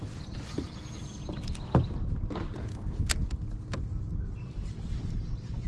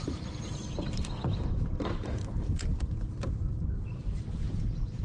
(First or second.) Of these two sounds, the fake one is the second